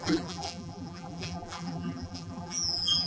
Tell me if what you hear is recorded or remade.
remade